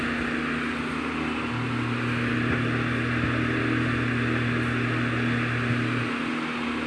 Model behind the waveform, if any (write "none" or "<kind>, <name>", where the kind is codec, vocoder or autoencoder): none